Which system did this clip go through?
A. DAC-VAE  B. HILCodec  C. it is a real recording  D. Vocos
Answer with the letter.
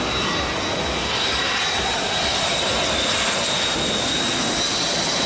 C